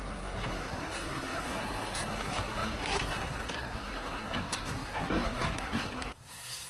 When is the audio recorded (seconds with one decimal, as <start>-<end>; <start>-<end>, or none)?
none

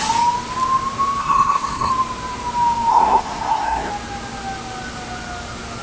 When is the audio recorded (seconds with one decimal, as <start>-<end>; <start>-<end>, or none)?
0.0-1.2; 1.9-2.9; 3.9-5.8

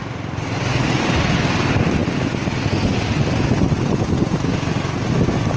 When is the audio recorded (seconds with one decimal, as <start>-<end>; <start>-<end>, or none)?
0.0-5.6

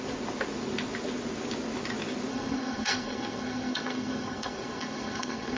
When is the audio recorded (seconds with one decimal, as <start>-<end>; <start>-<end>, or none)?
0.0-2.3